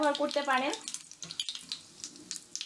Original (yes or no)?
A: yes